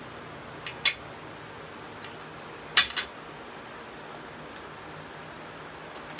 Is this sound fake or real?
real